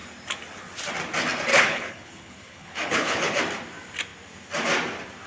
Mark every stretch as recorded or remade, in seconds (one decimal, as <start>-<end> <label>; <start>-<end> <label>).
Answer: 0.0-1.5 recorded; 1.5-3.4 remade; 3.4-5.3 recorded